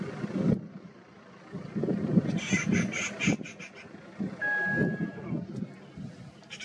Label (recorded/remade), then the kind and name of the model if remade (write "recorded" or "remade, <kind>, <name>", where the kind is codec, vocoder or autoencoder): recorded